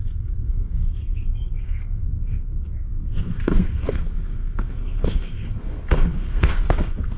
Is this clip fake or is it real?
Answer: fake